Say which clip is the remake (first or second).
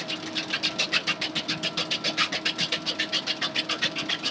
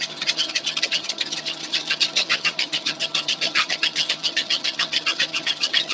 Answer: second